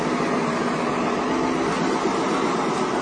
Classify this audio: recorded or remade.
recorded